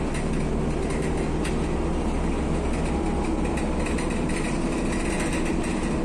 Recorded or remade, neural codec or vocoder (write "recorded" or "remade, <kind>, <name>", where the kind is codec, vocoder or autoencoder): recorded